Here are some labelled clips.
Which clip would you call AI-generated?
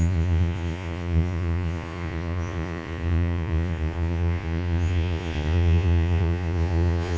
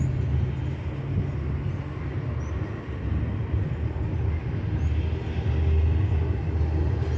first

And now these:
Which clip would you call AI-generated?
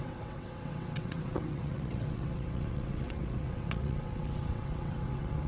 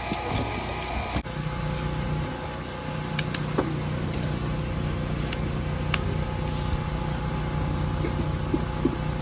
first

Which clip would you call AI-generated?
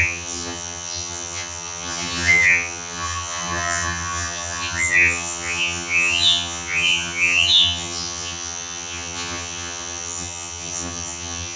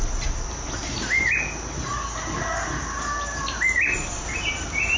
first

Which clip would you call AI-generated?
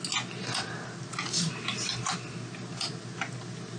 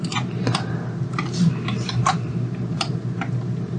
second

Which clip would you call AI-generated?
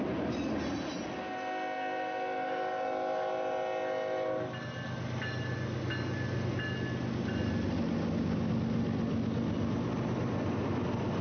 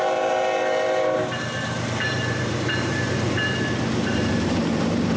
second